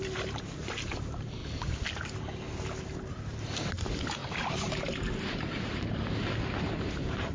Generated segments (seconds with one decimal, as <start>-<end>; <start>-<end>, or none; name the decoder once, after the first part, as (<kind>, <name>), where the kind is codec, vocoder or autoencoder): 0.0-1.4 (vocoder, BigVGAN v2); 2.8-7.3